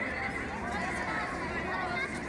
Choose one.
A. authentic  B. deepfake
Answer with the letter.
A